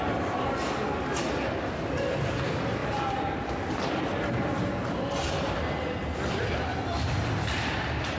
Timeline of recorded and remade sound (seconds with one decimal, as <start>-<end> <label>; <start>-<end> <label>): 0.0-8.2 recorded